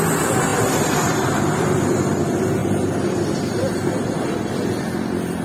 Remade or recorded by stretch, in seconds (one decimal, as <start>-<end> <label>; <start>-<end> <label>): 0.0-0.5 recorded; 0.5-2.2 remade; 2.2-2.6 recorded; 2.6-4.8 remade; 4.8-5.4 recorded